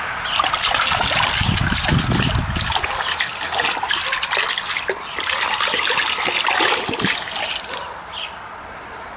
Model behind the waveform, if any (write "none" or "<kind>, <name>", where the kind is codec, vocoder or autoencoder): none